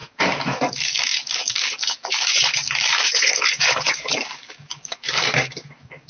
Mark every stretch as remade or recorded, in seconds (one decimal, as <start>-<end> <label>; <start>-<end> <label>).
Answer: 0.0-6.1 remade